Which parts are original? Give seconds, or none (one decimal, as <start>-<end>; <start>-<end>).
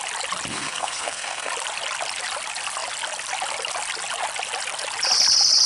0.0-0.5; 1.5-5.7